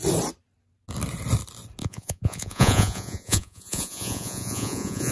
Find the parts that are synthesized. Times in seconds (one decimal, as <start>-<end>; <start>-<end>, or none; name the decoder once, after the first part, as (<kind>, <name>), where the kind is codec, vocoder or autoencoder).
1.8-5.1 (vocoder, Vocos)